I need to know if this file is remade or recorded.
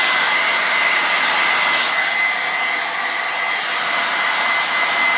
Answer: recorded